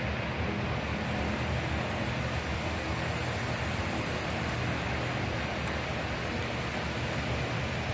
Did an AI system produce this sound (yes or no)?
no